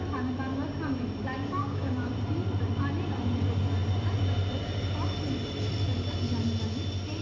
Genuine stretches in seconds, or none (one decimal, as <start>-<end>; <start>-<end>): 0.0-1.6; 2.1-7.2